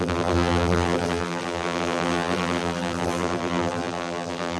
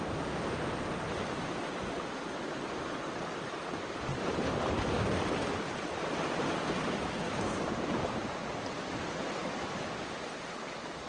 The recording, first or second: second